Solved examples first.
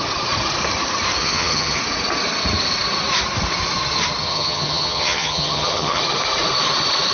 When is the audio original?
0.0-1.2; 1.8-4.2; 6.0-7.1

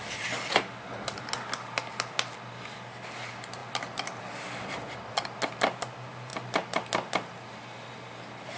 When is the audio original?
0.0-8.6

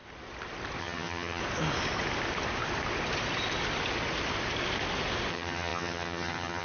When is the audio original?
0.0-0.8; 1.4-5.3

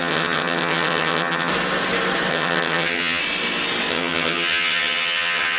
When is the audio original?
1.5-2.3; 3.2-3.9